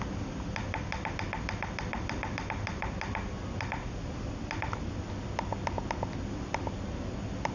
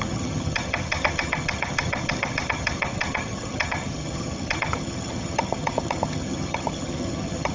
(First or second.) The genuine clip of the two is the first